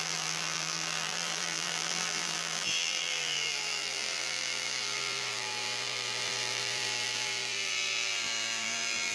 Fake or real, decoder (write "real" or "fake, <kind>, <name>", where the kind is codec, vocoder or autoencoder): fake, vocoder, BigVGAN v2